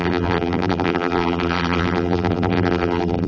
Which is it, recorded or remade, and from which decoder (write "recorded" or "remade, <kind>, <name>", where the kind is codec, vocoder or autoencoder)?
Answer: remade, vocoder, BigVGAN v2